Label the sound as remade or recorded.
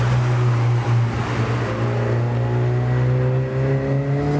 recorded